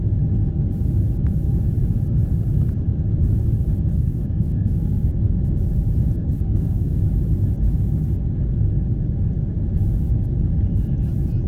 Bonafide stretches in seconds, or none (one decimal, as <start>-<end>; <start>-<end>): 0.0-3.9; 5.1-6.2; 7.0-11.5